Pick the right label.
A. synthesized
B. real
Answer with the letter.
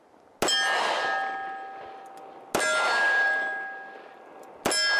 B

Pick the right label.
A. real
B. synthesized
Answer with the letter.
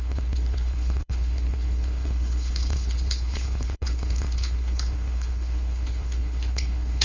B